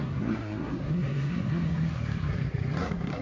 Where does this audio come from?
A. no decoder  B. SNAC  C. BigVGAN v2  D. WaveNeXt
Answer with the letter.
B